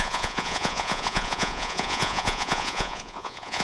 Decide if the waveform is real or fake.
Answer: fake